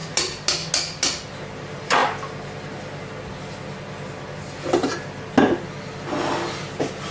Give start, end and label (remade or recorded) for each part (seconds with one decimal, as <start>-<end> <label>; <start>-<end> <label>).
0.0-7.1 recorded